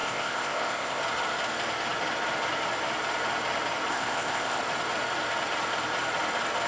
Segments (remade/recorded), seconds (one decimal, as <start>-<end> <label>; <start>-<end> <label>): 0.0-1.0 remade; 1.0-3.9 recorded; 3.9-4.6 remade; 4.6-6.7 recorded